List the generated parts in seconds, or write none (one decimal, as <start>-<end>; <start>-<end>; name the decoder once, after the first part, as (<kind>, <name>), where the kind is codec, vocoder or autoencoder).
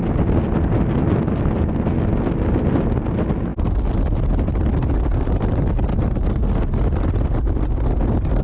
none